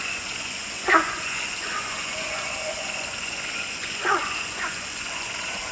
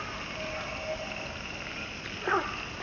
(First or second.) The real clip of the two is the second